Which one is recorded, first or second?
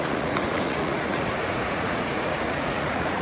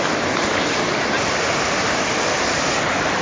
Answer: second